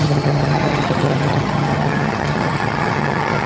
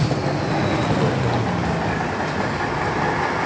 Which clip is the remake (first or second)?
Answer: first